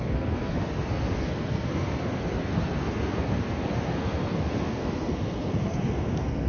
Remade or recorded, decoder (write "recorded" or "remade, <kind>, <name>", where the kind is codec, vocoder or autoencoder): remade, codec, SNAC